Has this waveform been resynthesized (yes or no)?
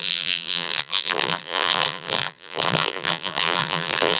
yes